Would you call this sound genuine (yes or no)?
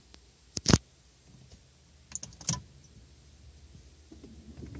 yes